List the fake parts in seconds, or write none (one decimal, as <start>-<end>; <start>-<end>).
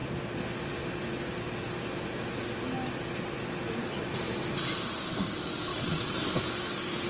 5.7-6.4